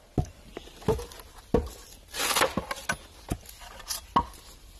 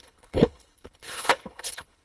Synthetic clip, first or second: second